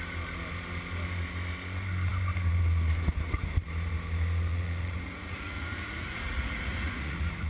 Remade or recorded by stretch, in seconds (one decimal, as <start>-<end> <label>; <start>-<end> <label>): 0.0-4.5 recorded; 4.5-7.5 remade